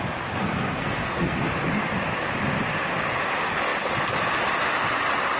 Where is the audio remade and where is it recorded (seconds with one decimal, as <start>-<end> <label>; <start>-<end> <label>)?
0.0-0.4 recorded; 0.4-1.5 remade; 1.5-5.4 recorded